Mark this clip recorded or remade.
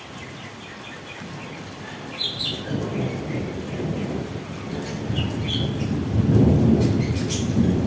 recorded